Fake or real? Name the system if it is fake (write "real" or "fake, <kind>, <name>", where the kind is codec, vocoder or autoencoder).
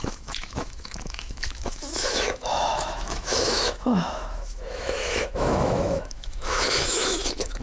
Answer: fake, autoencoder, DAC-VAE